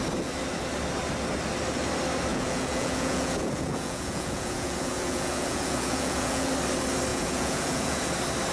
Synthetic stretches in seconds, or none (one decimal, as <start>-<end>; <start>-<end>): 2.3-6.5; 7.1-8.1